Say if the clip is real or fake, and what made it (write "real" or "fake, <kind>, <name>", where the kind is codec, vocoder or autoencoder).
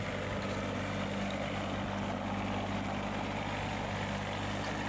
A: real